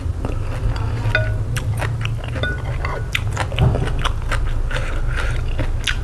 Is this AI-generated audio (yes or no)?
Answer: no